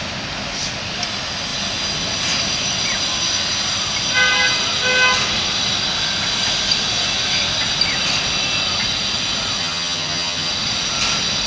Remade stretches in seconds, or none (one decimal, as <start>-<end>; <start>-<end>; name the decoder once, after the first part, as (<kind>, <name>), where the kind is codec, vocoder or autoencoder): 9.6-10.5 (vocoder, HiFi-GAN)